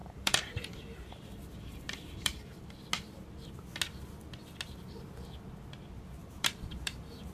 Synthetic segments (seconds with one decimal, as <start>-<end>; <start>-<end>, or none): 0.0-2.7; 6.2-7.3

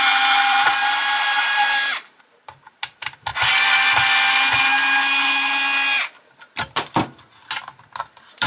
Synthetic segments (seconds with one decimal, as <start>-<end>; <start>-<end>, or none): 0.0-3.3; 8.0-8.5